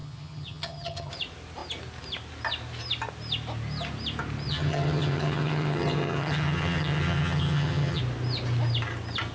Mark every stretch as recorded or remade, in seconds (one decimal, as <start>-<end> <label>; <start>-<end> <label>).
0.0-1.1 remade; 1.1-4.5 recorded; 4.5-8.0 remade; 8.0-9.3 recorded